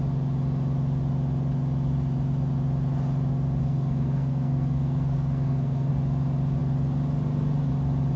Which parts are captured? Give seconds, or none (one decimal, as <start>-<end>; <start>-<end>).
0.0-3.6; 5.9-8.2